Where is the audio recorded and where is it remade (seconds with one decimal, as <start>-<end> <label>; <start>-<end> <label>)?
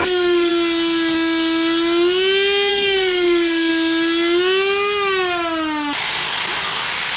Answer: 0.0-0.5 remade; 0.5-2.7 recorded; 2.7-3.7 remade; 3.7-7.2 recorded